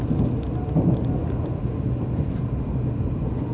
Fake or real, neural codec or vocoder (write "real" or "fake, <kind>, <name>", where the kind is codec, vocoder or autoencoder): real